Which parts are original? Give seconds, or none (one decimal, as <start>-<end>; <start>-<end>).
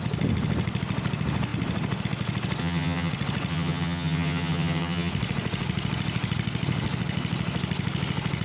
0.0-2.6; 3.1-3.5; 5.1-8.4